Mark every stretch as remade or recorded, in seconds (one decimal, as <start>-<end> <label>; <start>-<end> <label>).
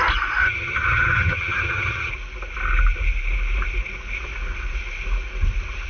0.0-0.4 recorded; 0.4-2.1 remade; 2.1-5.9 recorded